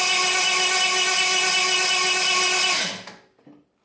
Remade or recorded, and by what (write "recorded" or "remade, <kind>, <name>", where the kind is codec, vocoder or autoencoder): recorded